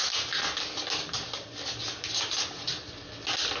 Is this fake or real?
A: real